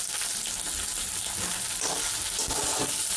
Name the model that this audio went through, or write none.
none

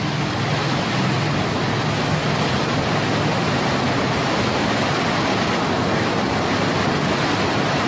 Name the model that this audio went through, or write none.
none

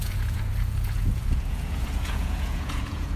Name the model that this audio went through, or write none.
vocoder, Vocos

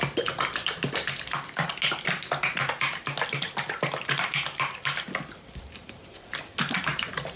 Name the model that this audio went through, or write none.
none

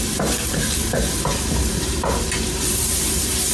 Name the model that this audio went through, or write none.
vocoder, BigVGAN v2